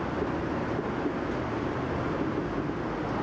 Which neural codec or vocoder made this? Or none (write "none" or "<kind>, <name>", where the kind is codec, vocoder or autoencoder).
none